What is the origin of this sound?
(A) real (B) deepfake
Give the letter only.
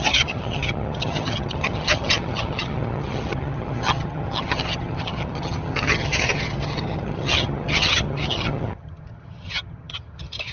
B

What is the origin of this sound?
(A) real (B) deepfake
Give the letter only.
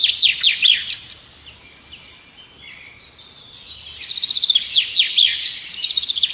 A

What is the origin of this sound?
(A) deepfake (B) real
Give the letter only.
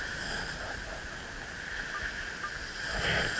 B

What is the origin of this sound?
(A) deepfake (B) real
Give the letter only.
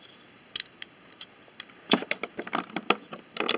B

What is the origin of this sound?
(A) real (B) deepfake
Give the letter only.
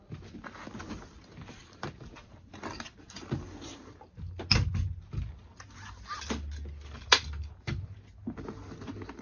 A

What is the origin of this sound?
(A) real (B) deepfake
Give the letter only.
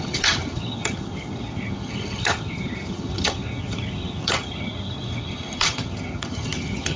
B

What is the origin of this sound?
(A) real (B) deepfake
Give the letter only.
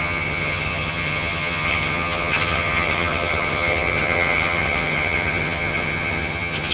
B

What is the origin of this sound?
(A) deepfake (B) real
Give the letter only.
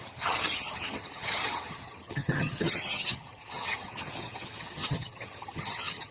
A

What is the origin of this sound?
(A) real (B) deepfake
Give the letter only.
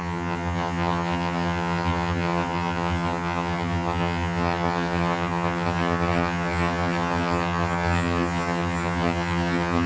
B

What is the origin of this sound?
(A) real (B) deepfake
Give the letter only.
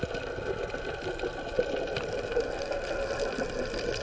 A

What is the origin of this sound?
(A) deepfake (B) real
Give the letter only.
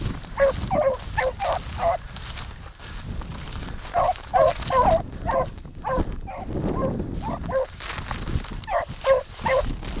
B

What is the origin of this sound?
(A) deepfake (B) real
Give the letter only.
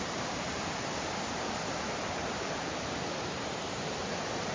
B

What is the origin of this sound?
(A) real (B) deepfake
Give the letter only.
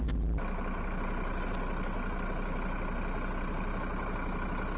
A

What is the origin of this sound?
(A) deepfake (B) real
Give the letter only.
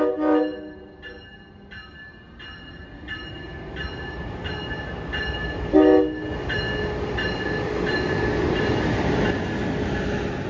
B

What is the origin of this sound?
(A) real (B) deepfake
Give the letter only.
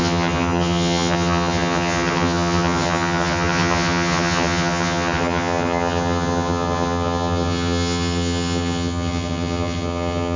B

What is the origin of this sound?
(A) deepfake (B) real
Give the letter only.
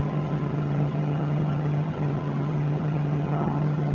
A